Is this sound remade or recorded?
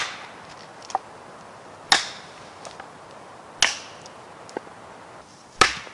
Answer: recorded